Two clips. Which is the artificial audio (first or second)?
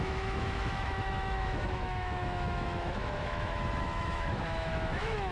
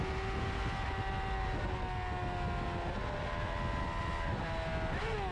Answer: first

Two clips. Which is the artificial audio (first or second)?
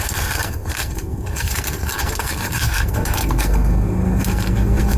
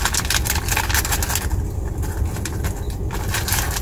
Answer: first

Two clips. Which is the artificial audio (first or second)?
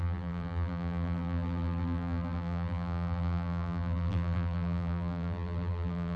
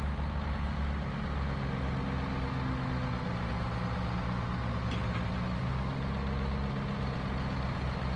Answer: first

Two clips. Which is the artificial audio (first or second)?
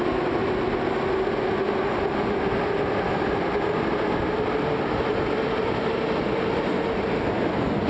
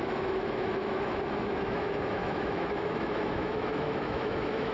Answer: second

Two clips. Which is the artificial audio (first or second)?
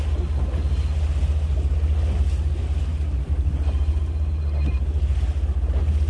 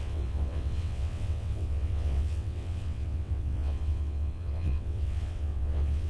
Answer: second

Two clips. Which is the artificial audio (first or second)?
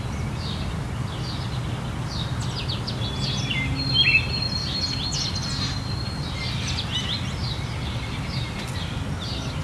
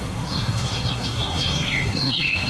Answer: second